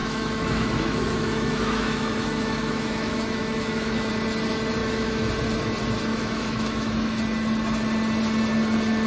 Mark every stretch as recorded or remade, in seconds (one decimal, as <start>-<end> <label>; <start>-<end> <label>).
0.0-4.1 remade; 4.1-4.8 recorded; 4.8-5.3 remade; 5.3-6.1 recorded; 6.1-7.2 remade; 7.2-9.1 recorded